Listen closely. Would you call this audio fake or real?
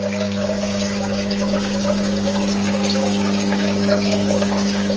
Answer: fake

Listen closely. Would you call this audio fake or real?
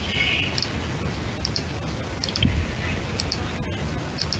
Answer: real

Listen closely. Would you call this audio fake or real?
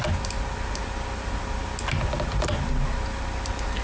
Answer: real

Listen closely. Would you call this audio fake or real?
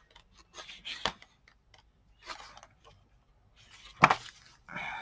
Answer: real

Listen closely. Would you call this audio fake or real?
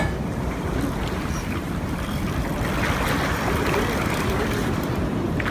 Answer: real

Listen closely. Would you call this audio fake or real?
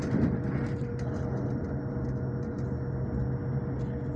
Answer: real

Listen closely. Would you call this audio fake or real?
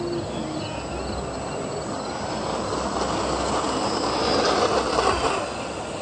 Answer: real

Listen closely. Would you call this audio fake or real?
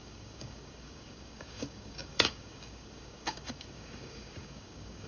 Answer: fake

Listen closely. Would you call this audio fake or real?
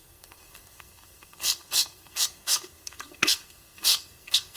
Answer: fake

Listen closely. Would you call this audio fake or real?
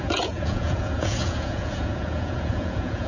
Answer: fake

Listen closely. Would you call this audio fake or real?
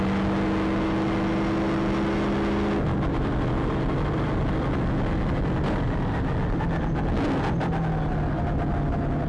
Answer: real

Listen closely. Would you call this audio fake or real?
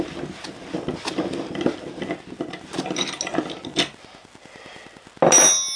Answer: real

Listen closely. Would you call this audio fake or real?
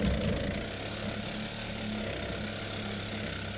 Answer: real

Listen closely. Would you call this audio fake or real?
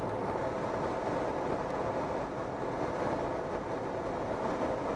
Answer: real